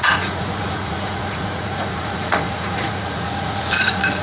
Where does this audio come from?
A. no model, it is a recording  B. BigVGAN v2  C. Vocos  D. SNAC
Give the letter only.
C